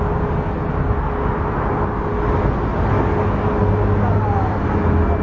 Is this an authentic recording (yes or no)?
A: yes